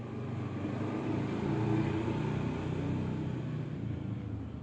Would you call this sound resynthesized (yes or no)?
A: no